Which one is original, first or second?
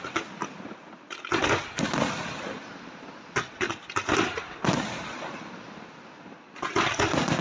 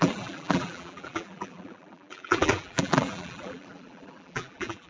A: first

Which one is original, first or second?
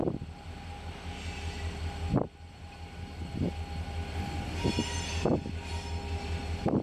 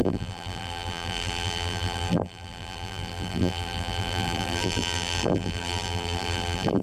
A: first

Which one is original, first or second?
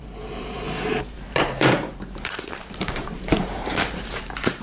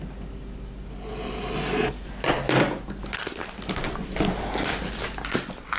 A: second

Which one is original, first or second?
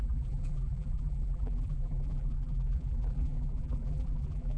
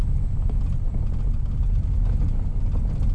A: second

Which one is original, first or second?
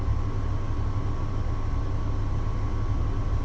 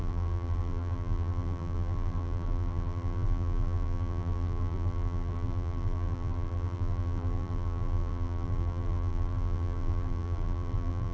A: first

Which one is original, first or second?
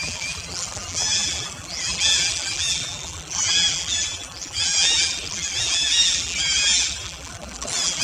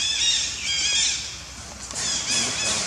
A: second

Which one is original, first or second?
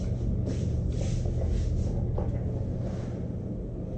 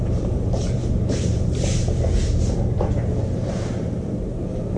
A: first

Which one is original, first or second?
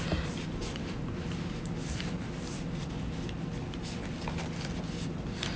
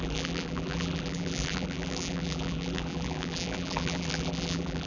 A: first